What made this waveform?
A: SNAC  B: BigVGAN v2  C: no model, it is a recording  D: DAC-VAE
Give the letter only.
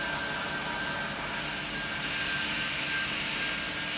C